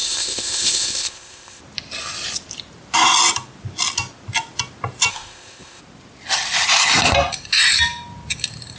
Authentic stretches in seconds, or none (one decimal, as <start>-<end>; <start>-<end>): 1.6-5.1; 5.8-8.8